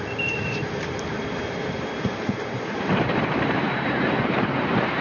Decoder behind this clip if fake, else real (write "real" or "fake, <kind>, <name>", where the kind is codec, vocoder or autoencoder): fake, vocoder, BigVGAN v2